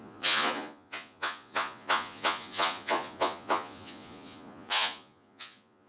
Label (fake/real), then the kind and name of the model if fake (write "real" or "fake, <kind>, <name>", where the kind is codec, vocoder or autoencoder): fake, vocoder, Vocos